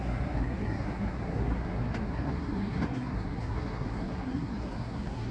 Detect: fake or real fake